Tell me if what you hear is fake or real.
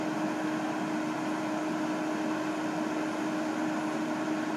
real